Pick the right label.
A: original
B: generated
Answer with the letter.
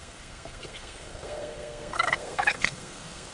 B